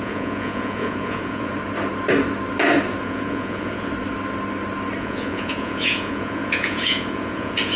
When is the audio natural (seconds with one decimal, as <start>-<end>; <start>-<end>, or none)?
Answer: 1.5-3.0; 3.9-5.0